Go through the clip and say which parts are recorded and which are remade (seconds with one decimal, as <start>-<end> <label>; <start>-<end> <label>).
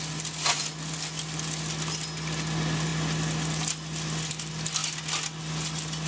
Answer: 0.0-6.1 recorded